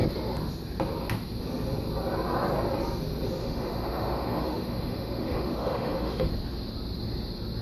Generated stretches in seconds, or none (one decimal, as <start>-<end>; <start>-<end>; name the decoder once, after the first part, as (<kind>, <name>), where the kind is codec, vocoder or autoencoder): 3.4-6.3 (autoencoder, DAC-VAE)